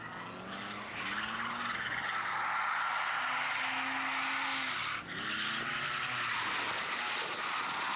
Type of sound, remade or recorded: recorded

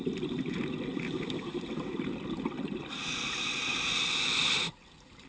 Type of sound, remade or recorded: recorded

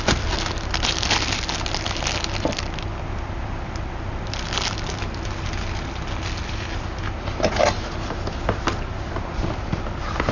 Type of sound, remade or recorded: recorded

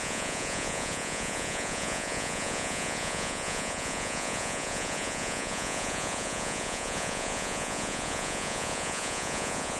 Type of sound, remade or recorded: remade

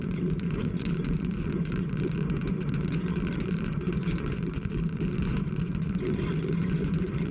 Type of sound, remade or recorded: remade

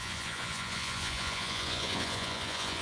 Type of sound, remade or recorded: remade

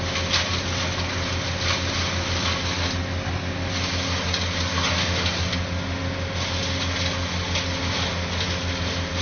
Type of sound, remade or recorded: recorded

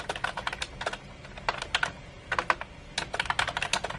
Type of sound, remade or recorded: recorded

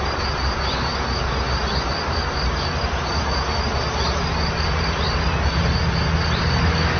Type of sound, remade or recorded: recorded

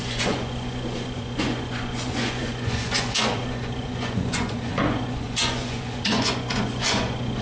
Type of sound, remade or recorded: remade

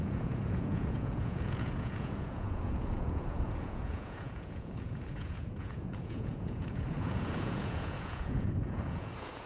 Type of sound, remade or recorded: remade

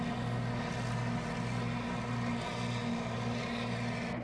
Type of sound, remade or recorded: recorded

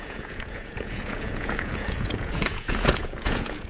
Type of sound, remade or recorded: remade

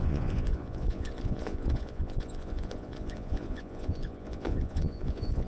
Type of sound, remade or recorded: remade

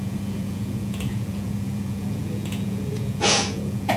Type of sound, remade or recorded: remade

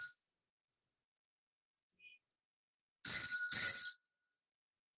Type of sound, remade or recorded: recorded